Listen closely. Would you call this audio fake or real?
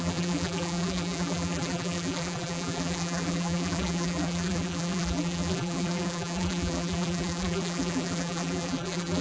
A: fake